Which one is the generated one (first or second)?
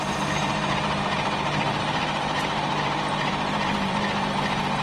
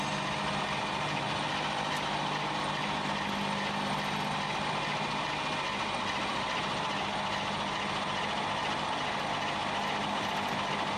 first